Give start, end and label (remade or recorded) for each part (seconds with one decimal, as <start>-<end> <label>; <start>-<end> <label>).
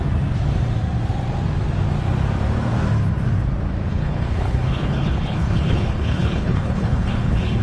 0.0-3.9 recorded; 3.9-7.6 remade